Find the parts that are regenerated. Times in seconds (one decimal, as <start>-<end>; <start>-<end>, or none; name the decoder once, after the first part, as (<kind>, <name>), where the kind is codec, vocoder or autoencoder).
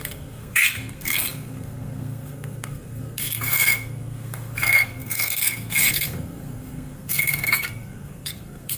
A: 0.0-8.8 (codec, SNAC)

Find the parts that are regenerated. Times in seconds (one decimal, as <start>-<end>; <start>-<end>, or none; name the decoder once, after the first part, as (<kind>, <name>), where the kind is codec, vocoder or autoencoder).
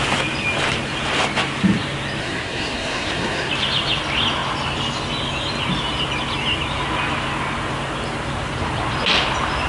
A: 2.2-3.5 (codec, SNAC)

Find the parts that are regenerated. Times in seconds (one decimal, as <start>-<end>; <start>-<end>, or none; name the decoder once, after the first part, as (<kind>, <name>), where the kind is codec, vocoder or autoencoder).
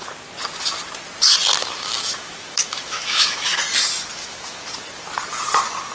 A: 1.6-3.6 (autoencoder, DAC-VAE); 4.2-4.7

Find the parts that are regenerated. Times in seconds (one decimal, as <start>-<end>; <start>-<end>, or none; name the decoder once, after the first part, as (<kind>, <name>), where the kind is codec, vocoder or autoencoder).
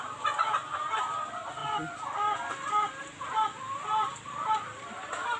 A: none